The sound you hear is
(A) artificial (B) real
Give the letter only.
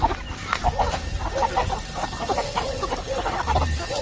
B